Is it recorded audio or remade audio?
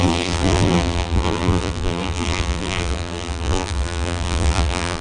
remade